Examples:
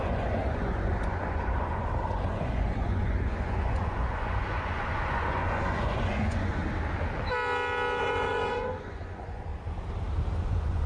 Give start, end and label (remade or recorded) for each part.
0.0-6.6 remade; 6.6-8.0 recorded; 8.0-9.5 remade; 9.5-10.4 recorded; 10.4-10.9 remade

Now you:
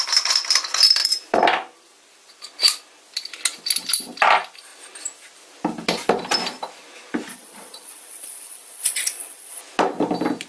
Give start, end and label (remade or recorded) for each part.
0.0-7.3 recorded; 7.3-9.6 remade; 9.6-10.5 recorded

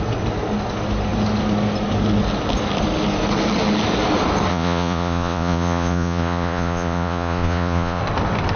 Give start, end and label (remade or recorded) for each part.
0.0-4.5 recorded; 4.5-8.0 remade; 8.0-8.6 recorded

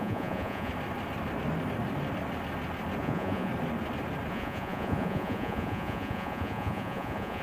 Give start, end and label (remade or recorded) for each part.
0.0-0.7 remade; 0.7-3.0 recorded; 3.0-3.5 remade; 3.5-4.3 recorded; 4.3-7.4 remade

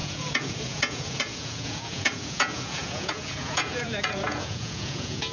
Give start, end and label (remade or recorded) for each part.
0.0-5.3 remade